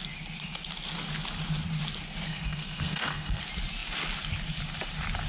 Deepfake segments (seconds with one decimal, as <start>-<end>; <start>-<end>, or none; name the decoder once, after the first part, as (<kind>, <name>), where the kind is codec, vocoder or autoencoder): 2.3-3.4 (codec, SNAC)